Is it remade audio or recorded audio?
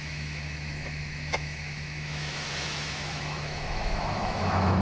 remade